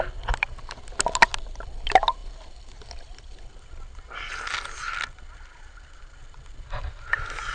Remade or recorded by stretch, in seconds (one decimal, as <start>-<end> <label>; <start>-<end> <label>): 0.0-7.5 recorded

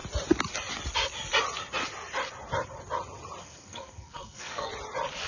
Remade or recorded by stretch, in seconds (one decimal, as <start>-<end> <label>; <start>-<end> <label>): 0.0-3.4 recorded; 3.4-4.7 remade; 4.7-5.3 recorded

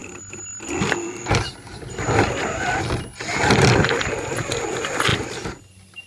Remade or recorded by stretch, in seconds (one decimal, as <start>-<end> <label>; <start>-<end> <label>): 0.0-0.8 remade; 0.8-1.7 recorded; 1.7-4.1 remade; 4.1-5.1 recorded; 5.1-5.6 remade; 5.6-6.1 recorded

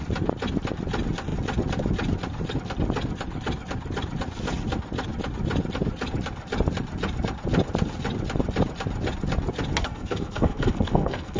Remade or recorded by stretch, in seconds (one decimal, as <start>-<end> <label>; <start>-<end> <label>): 0.0-9.8 recorded; 9.8-11.4 remade

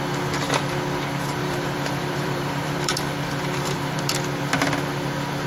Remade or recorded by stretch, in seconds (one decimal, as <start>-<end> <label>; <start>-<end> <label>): 0.0-1.4 recorded; 1.4-4.0 remade; 4.0-5.5 recorded

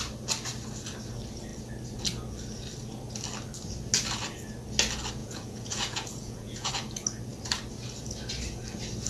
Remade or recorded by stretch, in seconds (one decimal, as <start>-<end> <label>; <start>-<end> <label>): 0.0-5.2 recorded; 5.2-6.7 remade; 6.7-9.1 recorded

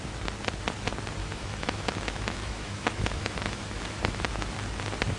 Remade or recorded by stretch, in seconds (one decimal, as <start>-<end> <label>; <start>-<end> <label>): 0.0-1.2 recorded; 1.2-4.3 remade; 4.3-5.2 recorded